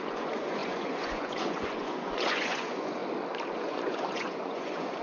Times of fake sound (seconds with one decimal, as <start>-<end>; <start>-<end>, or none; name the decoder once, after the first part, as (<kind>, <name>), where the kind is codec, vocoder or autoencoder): 0.0-3.0 (vocoder, Vocos); 3.5-5.0